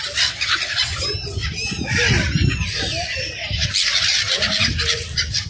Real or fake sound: real